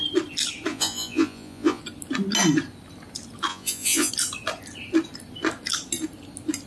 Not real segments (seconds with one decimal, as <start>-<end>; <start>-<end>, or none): 0.7-1.8; 3.5-4.1